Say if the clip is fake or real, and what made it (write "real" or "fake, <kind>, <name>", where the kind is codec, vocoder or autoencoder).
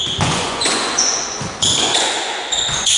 fake, vocoder, Vocos